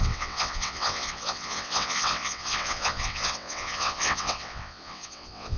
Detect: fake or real fake